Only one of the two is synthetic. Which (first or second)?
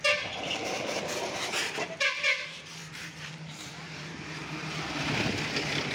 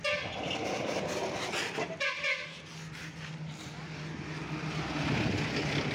first